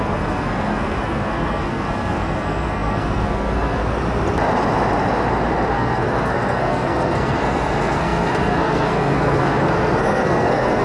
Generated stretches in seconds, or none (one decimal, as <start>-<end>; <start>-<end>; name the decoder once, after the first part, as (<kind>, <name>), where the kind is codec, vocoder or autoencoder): 0.0-3.8 (codec, SNAC); 5.7-10.8